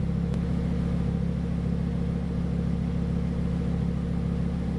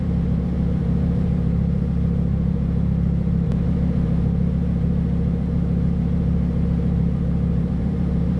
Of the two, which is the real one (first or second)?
first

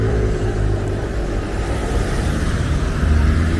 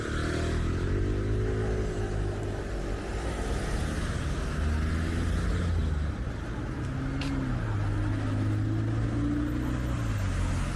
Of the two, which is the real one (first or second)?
second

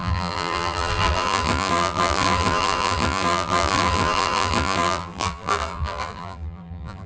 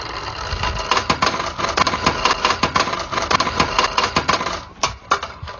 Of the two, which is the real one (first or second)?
second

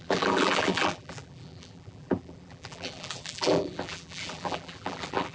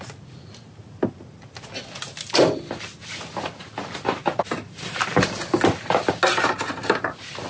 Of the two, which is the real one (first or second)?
second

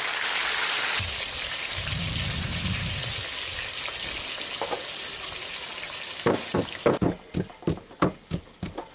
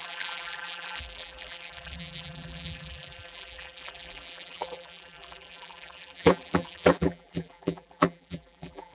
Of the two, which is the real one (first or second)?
first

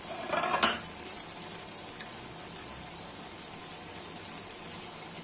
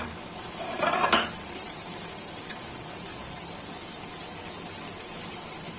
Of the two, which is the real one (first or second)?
first